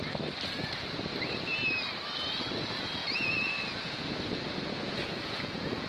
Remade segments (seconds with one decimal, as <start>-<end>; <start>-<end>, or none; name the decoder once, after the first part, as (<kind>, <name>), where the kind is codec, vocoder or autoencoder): 3.0-5.9 (vocoder, Vocos)